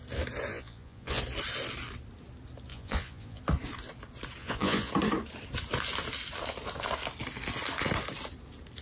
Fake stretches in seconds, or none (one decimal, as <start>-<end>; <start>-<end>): 0.5-1.2; 2.7-3.4; 4.4-4.9